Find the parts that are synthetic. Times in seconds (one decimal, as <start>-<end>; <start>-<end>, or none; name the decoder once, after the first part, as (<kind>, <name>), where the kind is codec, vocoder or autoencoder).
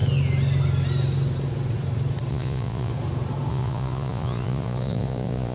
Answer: 2.3-2.9 (vocoder, Vocos); 3.5-5.5